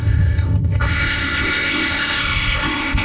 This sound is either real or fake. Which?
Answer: fake